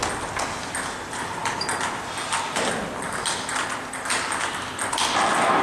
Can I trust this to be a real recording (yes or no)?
yes